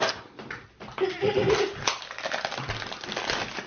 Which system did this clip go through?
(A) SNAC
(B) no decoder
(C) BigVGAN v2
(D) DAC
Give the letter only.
B